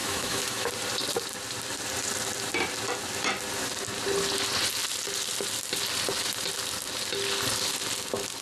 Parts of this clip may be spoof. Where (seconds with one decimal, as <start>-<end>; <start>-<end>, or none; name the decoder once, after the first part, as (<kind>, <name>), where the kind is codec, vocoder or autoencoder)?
0.0-0.7 (autoencoder, DAC-VAE)

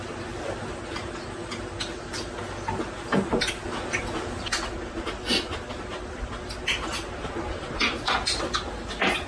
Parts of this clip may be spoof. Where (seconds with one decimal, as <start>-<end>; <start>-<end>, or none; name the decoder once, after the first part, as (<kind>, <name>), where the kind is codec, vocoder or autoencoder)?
none

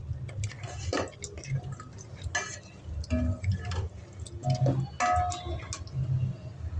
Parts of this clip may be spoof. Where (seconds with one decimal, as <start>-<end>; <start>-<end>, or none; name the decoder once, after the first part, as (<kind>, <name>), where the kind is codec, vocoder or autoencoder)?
none